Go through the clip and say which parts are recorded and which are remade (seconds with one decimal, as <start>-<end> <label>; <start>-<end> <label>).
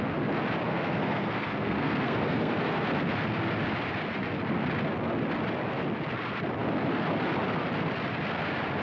0.0-0.7 recorded; 0.7-3.1 remade; 3.1-8.8 recorded